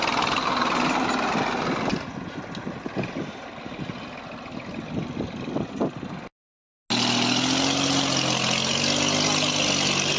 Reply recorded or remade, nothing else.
recorded